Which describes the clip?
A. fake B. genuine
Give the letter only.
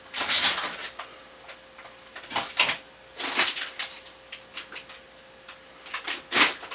B